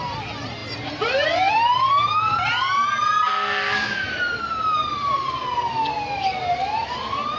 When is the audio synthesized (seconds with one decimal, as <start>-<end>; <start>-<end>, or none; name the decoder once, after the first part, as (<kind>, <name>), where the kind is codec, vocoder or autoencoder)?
0.0-2.5 (vocoder, BigVGAN v2); 3.9-5.2; 6.7-7.4

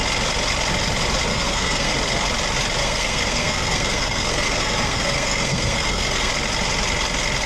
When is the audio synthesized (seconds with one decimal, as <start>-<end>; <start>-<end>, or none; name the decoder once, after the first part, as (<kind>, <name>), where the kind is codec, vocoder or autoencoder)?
1.3-1.9 (codec, SNAC); 2.8-6.3